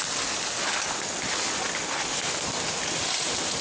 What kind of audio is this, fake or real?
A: real